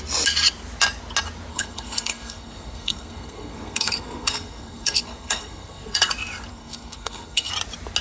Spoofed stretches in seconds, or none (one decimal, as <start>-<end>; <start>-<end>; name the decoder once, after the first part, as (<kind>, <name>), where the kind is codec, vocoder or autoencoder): 1.5-6.1 (codec, SNAC); 6.5-7.5